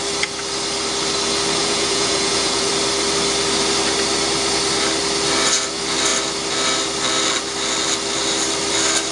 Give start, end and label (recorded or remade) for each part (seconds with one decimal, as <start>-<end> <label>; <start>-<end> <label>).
0.0-1.6 recorded; 1.6-2.7 remade; 2.7-9.1 recorded